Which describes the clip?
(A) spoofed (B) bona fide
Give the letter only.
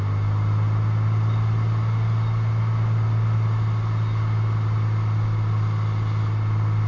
B